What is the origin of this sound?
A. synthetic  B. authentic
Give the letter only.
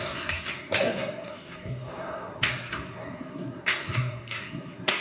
A